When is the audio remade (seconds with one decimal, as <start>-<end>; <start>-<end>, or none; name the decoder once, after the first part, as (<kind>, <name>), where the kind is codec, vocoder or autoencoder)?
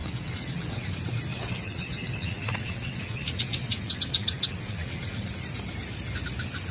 0.0-0.9 (vocoder, WaveNeXt); 1.3-5.3